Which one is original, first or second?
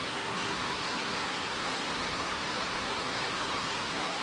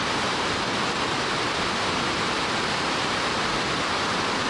second